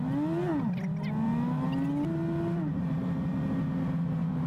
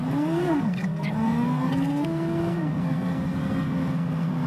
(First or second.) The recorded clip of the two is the first